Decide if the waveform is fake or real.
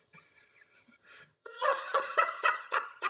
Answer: fake